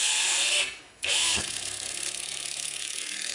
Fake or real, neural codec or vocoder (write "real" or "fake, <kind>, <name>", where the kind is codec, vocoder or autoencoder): fake, codec, SNAC